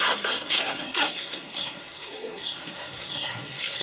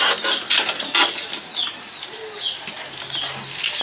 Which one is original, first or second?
second